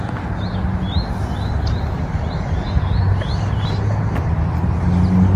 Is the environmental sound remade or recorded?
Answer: recorded